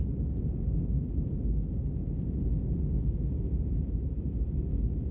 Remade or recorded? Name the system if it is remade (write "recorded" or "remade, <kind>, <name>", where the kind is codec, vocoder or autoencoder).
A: recorded